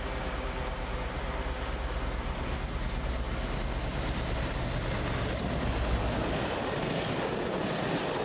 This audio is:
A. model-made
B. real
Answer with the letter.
B